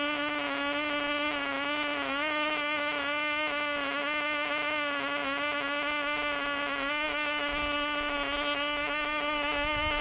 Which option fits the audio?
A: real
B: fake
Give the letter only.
A